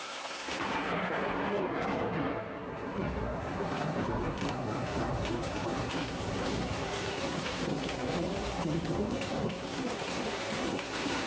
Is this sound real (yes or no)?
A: no